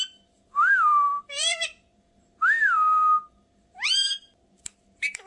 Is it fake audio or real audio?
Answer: fake